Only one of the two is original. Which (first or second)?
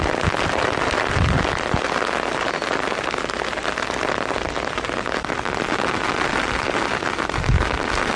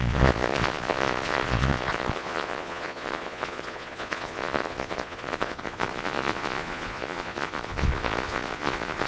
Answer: first